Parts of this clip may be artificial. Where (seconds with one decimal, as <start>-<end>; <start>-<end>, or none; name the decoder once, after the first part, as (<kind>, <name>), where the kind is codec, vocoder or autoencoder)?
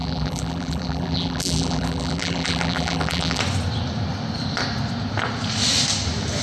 0.0-3.4 (vocoder, BigVGAN v2)